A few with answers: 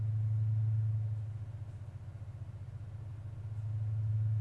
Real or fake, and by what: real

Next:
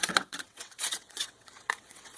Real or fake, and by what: fake, vocoder, WaveNeXt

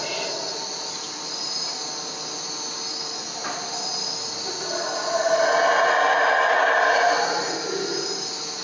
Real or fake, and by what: real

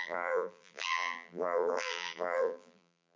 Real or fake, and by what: fake, vocoder, BigVGAN v2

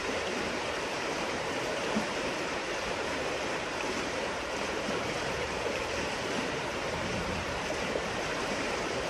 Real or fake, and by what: fake, vocoder, BigVGAN v2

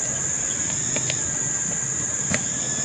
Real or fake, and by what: real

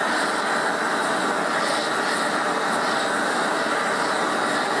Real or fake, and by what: real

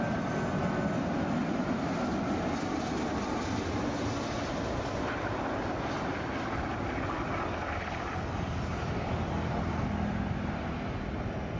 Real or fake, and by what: real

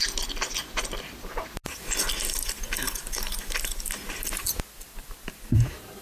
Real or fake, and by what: real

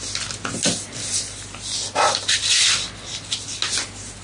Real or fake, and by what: real